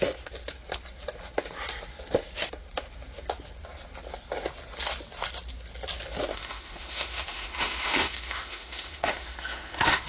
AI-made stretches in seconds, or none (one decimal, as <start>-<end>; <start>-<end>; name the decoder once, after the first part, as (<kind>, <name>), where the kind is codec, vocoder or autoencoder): 6.3-10.1 (autoencoder, DAC-VAE)